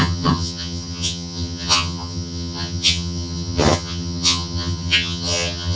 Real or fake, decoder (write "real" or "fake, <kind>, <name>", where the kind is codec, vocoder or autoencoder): fake, vocoder, HiFi-GAN